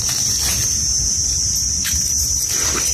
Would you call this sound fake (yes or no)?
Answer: no